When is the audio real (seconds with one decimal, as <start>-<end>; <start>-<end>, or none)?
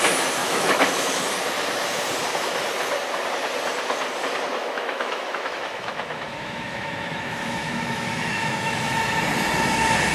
0.0-0.4; 1.2-4.6; 8.9-10.1